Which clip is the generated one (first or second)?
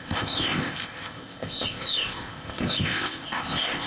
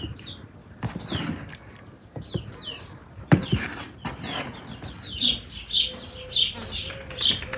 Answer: first